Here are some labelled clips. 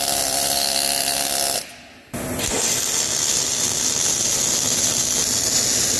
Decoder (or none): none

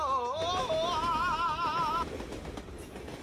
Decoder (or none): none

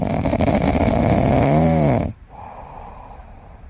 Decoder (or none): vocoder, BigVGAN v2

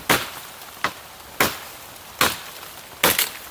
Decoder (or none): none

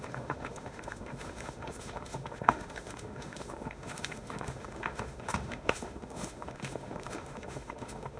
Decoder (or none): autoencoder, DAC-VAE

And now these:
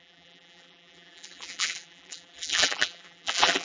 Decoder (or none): vocoder, BigVGAN v2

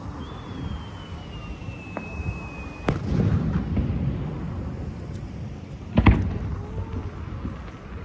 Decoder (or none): none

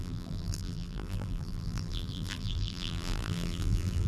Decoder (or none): vocoder, BigVGAN v2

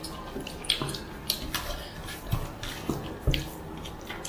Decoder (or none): none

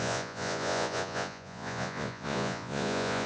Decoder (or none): vocoder, Vocos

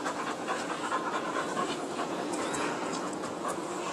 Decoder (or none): vocoder, Vocos